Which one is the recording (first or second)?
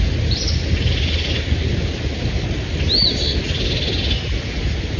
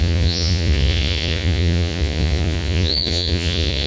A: first